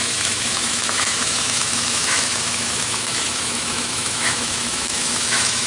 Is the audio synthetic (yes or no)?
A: yes